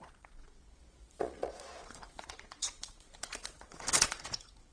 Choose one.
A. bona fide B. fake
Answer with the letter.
B